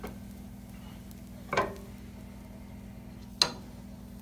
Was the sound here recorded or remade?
recorded